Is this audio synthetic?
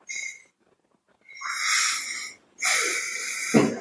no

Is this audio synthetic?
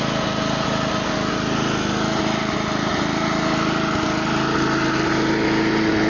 no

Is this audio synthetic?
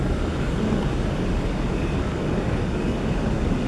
yes